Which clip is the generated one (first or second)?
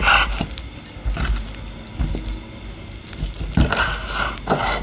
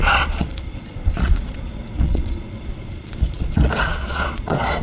second